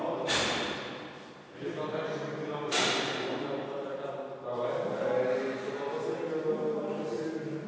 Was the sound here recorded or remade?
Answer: recorded